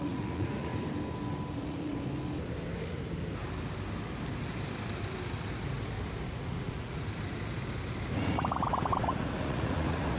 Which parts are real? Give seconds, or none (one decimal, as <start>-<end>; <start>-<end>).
0.7-1.5; 1.9-6.3; 7.1-8.1